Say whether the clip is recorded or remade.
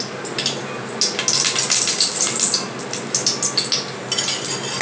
recorded